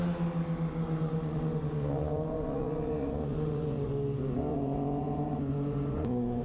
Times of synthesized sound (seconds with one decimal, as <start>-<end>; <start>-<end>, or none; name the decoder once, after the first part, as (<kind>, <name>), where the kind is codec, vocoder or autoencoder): 0.7-3.9 (vocoder, Vocos); 4.5-6.4